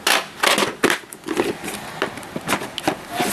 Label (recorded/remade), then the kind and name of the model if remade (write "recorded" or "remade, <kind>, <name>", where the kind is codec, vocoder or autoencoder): recorded